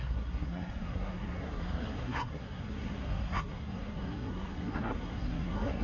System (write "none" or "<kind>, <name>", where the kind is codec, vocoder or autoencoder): codec, SNAC